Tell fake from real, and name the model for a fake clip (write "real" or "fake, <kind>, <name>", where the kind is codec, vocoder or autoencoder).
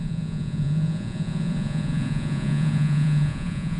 fake, vocoder, Vocos